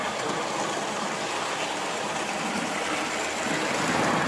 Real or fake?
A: real